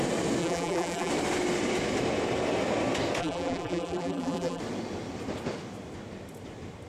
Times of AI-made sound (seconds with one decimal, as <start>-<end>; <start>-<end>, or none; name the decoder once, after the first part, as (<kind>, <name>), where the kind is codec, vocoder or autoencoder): 0.4-1.1 (vocoder, BigVGAN v2); 3.2-4.6